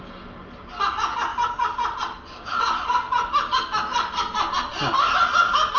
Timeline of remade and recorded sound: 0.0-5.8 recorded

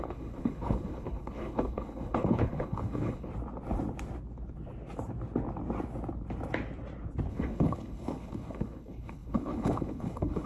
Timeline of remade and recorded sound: 0.0-3.3 remade; 3.3-7.3 recorded; 7.3-10.5 remade

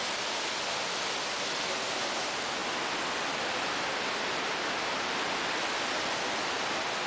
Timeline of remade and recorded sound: 0.0-7.1 recorded

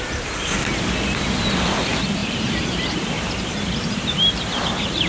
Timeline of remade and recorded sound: 0.0-2.2 recorded; 2.2-5.1 remade

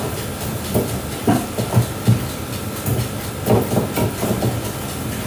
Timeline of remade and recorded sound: 0.0-2.9 recorded; 2.9-5.3 remade

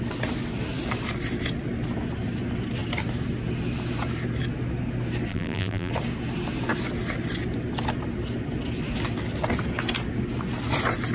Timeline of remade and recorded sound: 0.0-5.3 recorded; 5.3-5.9 remade; 5.9-11.1 recorded

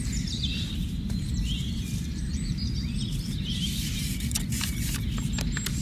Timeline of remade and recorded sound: 0.0-0.5 recorded; 0.5-4.0 remade; 4.0-5.8 recorded

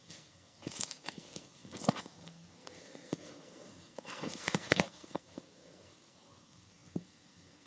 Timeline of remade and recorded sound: 0.0-7.7 remade